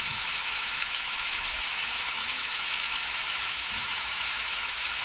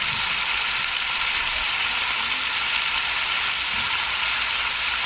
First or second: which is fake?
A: first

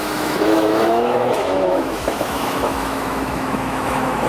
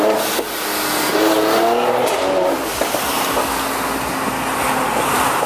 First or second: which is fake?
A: first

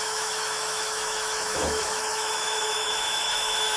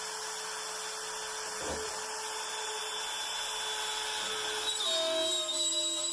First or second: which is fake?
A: first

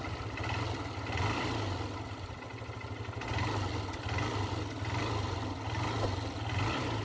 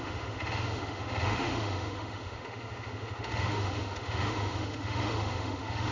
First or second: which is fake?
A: second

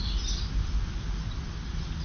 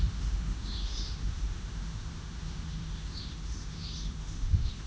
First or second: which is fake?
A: second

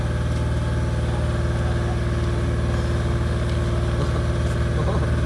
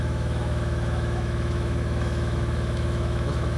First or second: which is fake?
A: second